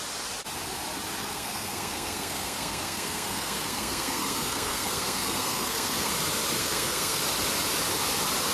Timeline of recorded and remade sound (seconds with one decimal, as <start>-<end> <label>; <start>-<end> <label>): 0.0-1.2 recorded; 1.2-6.1 remade; 6.1-6.6 recorded; 6.6-7.2 remade; 7.2-8.5 recorded